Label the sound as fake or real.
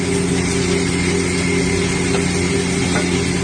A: real